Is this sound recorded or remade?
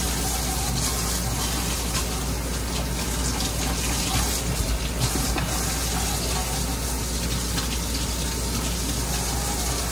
recorded